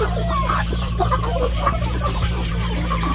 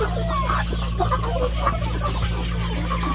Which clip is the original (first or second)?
second